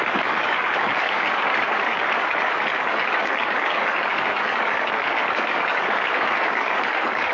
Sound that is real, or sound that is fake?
fake